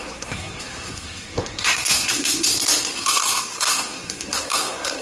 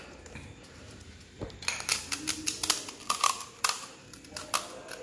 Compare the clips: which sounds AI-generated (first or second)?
first